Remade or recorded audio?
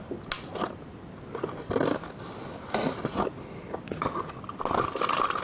recorded